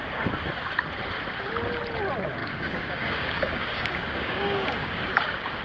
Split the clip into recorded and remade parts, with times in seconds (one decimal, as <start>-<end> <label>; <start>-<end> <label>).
0.0-2.4 recorded; 2.4-5.6 remade